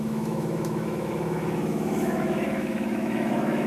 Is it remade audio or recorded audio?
remade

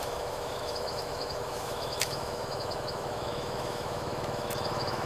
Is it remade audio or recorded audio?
remade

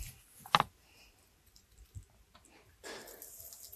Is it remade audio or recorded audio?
recorded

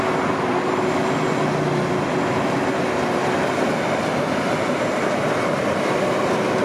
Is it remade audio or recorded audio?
recorded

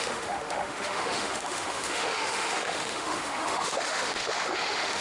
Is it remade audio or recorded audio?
remade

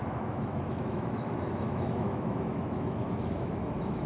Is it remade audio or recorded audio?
remade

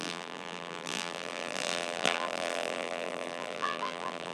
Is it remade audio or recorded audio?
remade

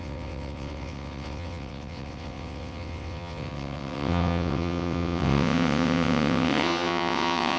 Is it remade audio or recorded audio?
remade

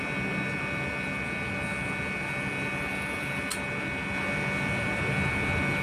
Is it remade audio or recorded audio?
recorded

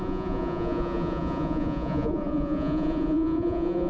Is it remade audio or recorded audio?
remade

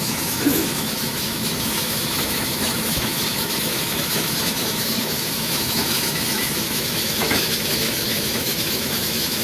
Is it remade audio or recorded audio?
remade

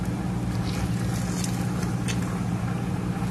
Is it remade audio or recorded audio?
recorded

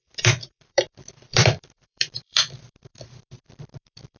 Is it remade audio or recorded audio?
remade